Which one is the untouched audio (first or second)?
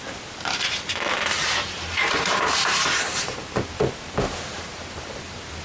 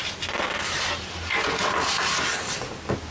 second